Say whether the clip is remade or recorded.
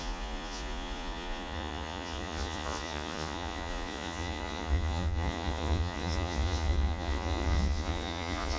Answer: remade